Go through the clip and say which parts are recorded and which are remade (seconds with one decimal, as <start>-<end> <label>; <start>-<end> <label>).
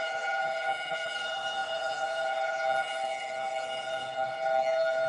0.0-5.1 remade